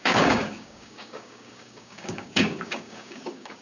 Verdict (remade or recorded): remade